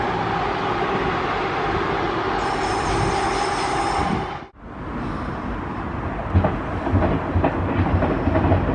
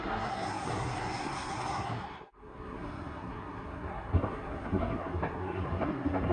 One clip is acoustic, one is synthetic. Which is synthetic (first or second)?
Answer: second